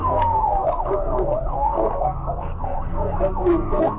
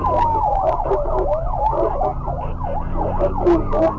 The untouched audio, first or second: second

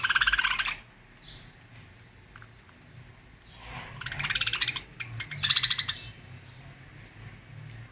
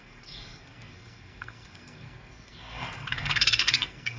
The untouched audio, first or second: first